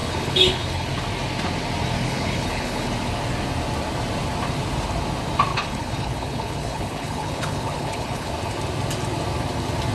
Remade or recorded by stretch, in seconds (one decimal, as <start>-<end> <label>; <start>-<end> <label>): 0.0-0.9 remade; 0.9-2.0 recorded; 2.0-2.9 remade; 2.9-5.5 recorded; 5.5-8.3 remade; 8.3-9.9 recorded